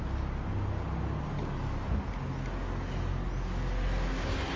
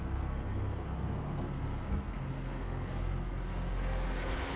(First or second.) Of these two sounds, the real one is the first